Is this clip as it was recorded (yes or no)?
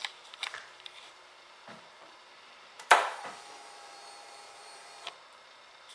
no